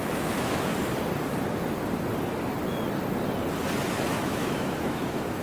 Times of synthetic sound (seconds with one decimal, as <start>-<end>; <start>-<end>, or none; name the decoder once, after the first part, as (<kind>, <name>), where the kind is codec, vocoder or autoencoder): 0.0-0.7 (autoencoder, DAC-VAE); 3.9-5.4